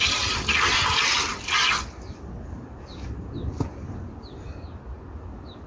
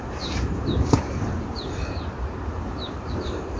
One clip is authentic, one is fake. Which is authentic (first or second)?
first